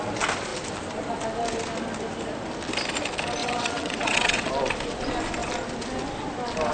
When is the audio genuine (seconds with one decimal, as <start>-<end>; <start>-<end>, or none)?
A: 0.0-3.4; 4.5-6.7